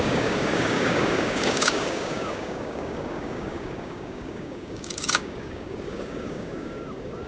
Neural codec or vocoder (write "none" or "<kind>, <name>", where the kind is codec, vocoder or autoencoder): codec, DAC